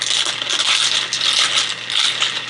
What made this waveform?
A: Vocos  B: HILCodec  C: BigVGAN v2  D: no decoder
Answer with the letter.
D